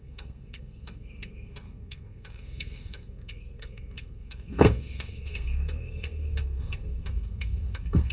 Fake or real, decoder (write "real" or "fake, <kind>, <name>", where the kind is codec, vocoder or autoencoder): fake, codec, SNAC